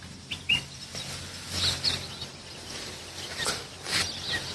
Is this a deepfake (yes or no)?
no